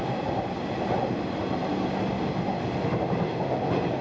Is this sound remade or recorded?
recorded